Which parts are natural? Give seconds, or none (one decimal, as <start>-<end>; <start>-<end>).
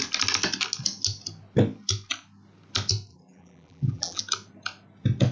0.0-3.1; 4.2-5.3